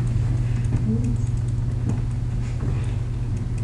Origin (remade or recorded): recorded